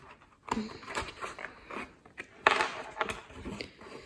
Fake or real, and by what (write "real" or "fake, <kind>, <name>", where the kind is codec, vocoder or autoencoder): real